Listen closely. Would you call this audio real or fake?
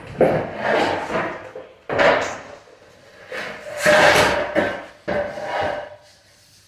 real